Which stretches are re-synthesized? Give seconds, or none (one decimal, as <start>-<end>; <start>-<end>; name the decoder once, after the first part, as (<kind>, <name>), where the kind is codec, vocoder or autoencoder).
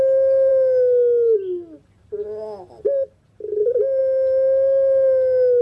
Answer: none